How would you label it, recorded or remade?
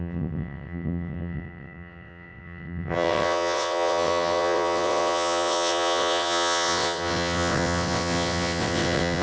remade